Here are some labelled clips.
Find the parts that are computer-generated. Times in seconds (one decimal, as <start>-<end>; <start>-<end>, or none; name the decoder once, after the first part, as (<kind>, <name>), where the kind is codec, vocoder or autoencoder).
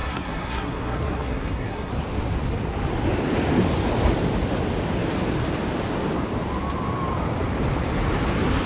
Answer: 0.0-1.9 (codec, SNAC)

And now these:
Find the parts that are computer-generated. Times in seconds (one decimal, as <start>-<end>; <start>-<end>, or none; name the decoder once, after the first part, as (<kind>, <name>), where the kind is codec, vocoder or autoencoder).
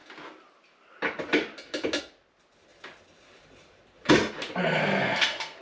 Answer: 4.6-5.6 (codec, SNAC)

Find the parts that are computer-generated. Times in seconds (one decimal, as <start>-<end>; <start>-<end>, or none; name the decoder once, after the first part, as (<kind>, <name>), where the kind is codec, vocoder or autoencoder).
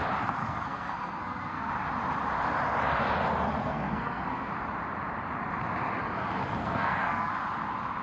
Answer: 0.4-1.7 (codec, SNAC); 3.6-4.5; 6.6-7.3